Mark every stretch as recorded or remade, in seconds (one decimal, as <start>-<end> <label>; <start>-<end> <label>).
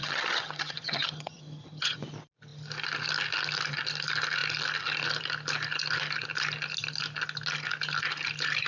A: 0.0-2.0 remade; 2.0-8.7 recorded